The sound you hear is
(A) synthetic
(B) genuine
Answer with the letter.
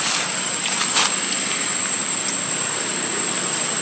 B